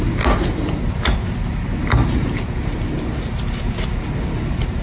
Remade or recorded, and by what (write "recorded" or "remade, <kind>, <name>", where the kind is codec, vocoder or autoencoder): recorded